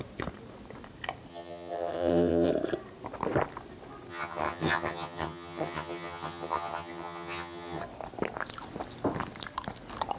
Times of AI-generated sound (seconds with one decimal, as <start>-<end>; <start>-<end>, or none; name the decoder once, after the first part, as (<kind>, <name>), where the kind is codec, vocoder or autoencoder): 1.3-2.5 (vocoder, HiFi-GAN); 4.1-7.8